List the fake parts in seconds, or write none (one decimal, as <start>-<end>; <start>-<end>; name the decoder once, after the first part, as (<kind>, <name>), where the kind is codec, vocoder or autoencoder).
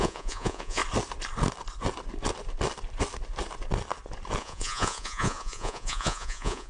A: 0.0-0.8 (vocoder, Vocos); 4.4-6.7